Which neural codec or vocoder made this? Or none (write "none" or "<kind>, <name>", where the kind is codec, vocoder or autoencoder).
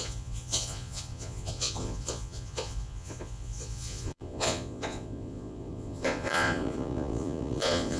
vocoder, Vocos